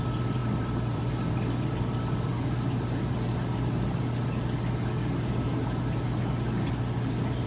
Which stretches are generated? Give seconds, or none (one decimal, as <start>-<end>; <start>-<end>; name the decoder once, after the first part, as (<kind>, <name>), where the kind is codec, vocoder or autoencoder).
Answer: 0.4-1.0 (vocoder, BigVGAN v2)